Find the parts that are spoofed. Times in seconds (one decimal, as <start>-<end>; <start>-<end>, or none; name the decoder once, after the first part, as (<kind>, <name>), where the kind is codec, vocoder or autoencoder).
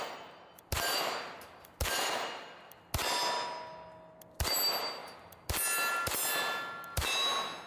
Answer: none